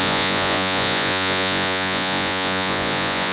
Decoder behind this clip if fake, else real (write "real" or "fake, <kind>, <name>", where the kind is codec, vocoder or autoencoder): fake, vocoder, Vocos